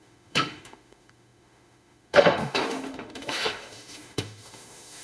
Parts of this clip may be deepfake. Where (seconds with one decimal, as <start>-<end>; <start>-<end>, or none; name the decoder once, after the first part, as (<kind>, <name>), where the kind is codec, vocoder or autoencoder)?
0.0-5.0 (autoencoder, DAC-VAE)